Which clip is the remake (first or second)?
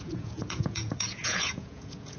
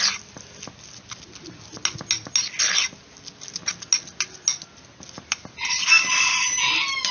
first